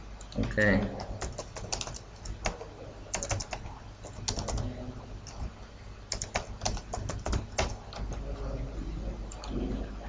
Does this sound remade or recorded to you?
recorded